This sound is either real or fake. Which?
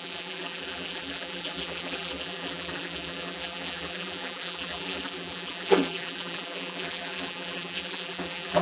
fake